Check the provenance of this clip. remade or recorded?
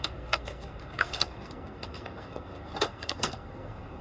remade